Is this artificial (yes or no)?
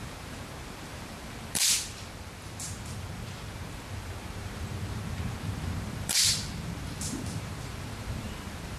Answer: yes